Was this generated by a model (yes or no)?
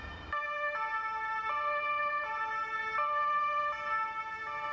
no